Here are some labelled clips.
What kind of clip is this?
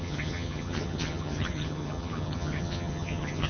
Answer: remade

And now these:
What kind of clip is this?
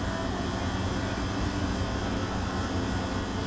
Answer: recorded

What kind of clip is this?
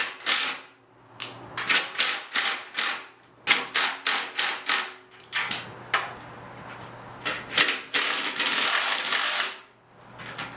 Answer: recorded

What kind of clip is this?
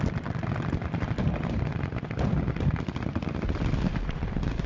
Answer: recorded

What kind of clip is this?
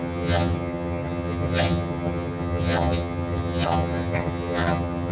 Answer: remade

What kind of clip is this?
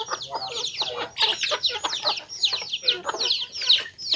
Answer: recorded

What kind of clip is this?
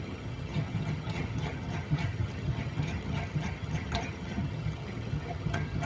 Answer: remade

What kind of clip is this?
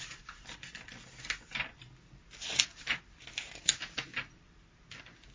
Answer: recorded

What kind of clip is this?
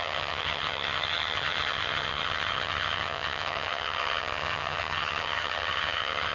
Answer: remade